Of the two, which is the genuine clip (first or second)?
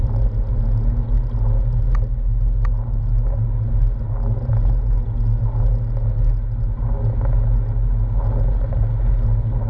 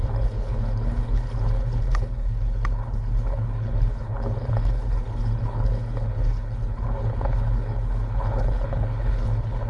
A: first